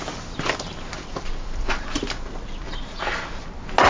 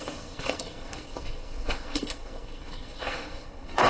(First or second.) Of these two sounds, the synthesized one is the second